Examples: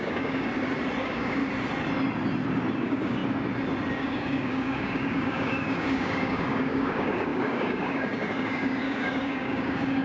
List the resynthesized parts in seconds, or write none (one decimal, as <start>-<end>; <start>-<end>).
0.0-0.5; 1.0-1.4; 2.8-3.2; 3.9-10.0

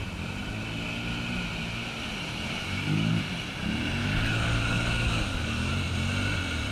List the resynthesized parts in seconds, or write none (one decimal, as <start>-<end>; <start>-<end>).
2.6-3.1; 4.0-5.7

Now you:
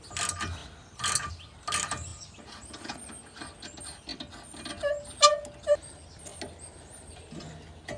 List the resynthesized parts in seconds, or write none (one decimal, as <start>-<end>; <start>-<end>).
none

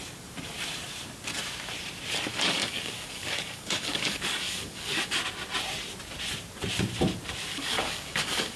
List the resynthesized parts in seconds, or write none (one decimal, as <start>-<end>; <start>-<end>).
2.3-5.2; 7.5-8.6

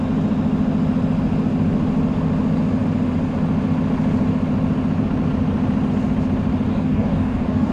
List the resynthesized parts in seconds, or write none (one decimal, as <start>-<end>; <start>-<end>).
6.7-7.7

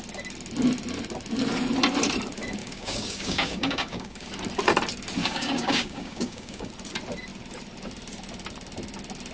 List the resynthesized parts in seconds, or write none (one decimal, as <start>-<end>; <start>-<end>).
2.6-4.3; 5.2-6.7